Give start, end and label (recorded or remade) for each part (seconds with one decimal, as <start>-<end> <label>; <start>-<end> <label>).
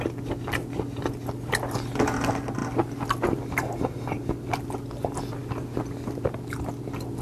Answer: 0.0-7.2 recorded